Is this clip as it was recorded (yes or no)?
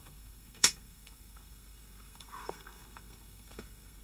no